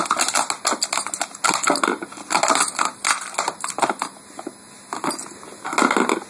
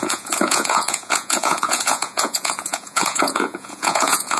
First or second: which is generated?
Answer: second